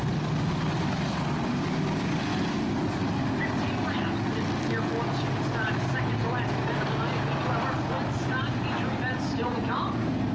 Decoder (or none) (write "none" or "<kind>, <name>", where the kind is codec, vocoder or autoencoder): none